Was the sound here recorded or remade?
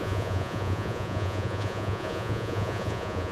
remade